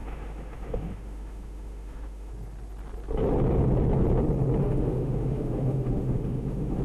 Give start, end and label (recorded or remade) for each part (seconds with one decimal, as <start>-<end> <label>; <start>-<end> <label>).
0.0-2.3 remade; 2.3-4.6 recorded; 4.6-6.8 remade